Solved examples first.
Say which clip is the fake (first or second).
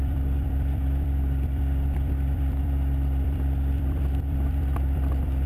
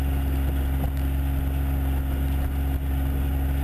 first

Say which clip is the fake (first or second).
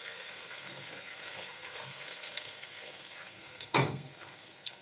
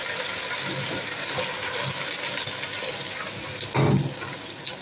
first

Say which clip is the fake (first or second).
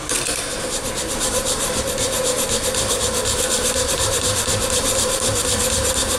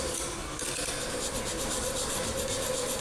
first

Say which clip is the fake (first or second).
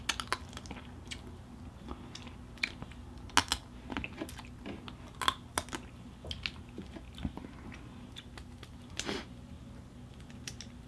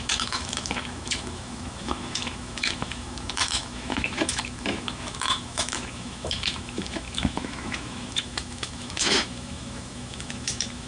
second